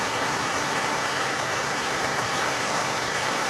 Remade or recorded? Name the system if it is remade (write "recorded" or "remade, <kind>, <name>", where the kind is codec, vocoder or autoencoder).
remade, codec, SNAC